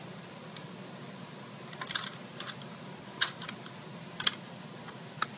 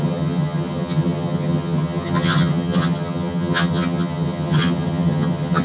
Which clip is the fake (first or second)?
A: second